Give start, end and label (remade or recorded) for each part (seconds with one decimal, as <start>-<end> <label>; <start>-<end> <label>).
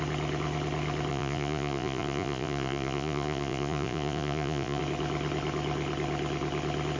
0.0-1.1 recorded; 1.1-4.8 remade; 4.8-7.0 recorded